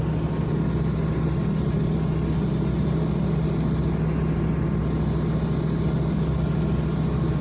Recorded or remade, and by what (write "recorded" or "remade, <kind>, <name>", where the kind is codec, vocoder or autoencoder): recorded